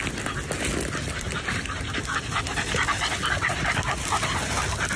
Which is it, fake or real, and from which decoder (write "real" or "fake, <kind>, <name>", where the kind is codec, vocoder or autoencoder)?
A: real